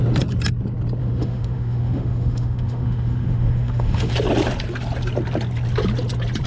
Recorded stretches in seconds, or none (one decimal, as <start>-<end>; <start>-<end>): 0.0-1.0; 4.1-6.5